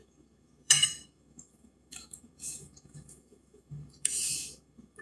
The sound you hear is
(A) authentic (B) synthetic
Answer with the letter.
B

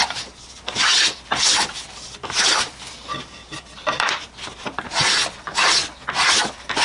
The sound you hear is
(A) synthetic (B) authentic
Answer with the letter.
B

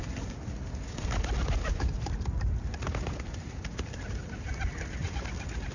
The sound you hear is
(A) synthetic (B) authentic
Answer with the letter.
B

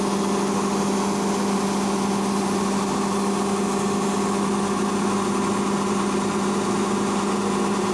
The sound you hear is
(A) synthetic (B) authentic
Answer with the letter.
B